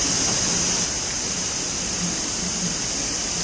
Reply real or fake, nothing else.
real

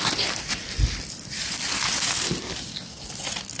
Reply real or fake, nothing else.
real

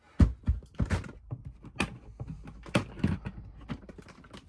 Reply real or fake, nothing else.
real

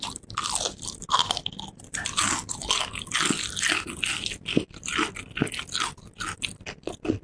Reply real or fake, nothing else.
real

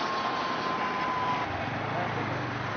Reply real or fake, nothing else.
real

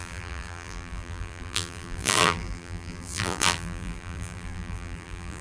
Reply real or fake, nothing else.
fake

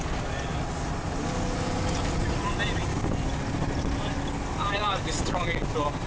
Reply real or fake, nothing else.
real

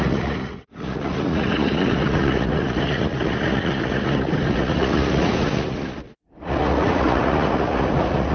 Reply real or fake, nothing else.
fake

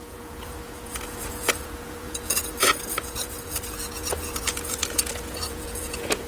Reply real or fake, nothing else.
fake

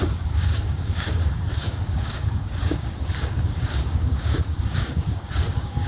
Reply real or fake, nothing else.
fake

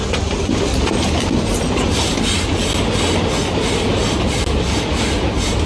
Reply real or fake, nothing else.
real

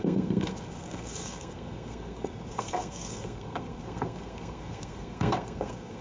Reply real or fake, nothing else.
fake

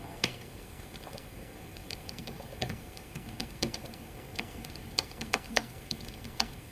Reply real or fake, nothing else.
fake